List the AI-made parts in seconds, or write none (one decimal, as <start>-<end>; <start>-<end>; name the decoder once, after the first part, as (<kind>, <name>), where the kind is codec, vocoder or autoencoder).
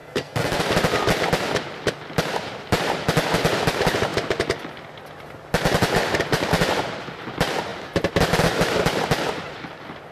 0.0-0.6 (codec, SNAC)